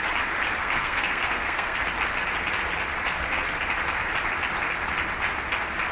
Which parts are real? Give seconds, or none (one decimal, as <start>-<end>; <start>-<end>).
0.0-0.6; 1.8-5.9